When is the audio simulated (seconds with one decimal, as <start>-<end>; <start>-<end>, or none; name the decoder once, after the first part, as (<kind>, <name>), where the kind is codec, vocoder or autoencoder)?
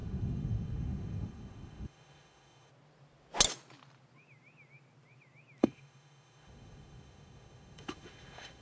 0.0-2.7 (autoencoder, DAC-VAE); 5.6-8.6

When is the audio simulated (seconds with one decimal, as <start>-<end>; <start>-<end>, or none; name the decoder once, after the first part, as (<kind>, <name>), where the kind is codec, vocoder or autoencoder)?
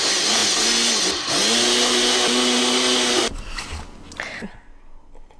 none